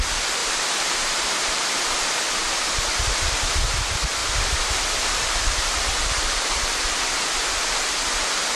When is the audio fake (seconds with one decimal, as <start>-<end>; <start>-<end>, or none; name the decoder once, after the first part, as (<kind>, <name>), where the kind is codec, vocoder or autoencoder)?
0.4-1.6 (vocoder, BigVGAN v2); 2.4-3.4; 4.2-7.9